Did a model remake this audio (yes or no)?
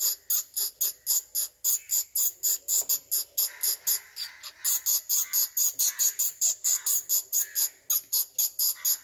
no